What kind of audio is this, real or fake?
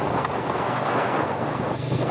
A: fake